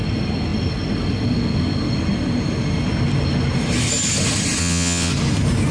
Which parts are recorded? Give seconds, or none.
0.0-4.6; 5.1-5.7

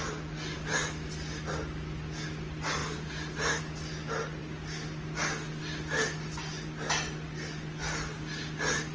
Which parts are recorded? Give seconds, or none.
0.0-8.9

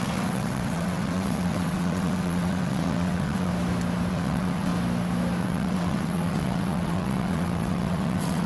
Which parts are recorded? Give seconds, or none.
3.5-4.1; 4.7-5.4

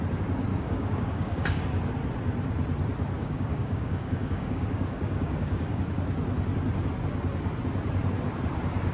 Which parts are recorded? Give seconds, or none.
0.0-0.5; 1.6-3.2; 5.8-8.9

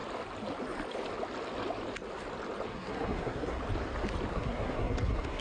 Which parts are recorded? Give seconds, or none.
0.0-2.7; 3.6-4.3

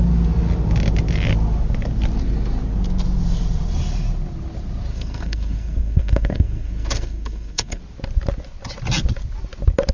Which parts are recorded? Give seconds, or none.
0.0-4.9; 7.8-9.9

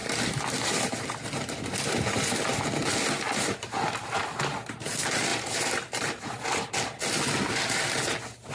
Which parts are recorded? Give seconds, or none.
1.9-5.3; 7.0-8.5

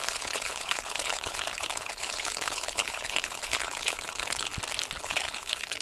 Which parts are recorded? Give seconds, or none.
4.5-5.0